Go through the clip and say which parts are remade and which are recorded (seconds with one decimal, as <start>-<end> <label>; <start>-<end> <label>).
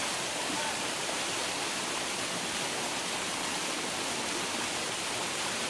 0.0-1.4 remade; 1.4-4.8 recorded; 4.8-5.7 remade